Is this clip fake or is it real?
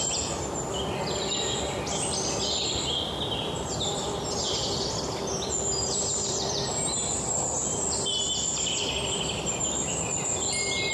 real